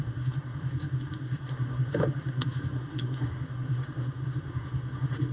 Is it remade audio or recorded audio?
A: remade